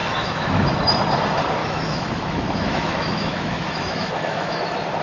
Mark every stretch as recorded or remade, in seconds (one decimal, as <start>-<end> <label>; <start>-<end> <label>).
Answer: 0.0-0.8 remade; 0.8-1.6 recorded; 1.6-4.6 remade; 4.6-5.0 recorded